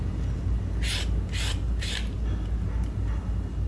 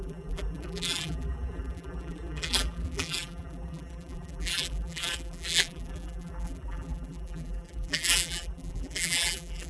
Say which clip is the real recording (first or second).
first